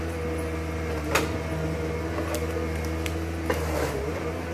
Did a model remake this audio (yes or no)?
no